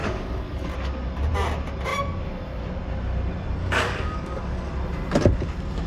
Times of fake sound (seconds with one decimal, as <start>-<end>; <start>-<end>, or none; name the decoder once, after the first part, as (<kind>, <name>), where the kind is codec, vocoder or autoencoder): 0.0-0.7 (codec, DAC); 3.6-4.7